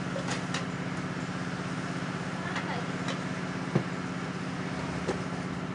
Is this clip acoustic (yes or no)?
yes